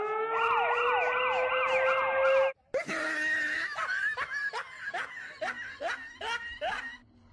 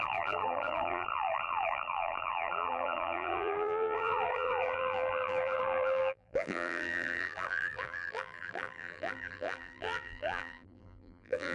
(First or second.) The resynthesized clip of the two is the second